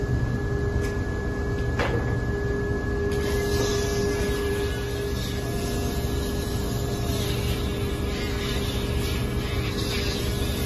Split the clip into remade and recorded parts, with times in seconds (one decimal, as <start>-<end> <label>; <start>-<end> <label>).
0.0-10.7 recorded